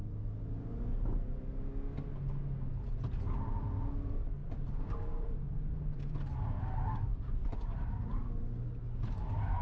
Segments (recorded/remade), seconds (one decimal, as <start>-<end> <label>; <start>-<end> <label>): 0.0-4.4 recorded; 4.4-6.5 remade; 6.5-7.1 recorded; 7.1-7.9 remade; 7.9-9.6 recorded